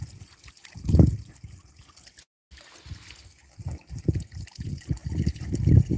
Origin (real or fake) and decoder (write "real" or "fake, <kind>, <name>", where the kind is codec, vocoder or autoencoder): real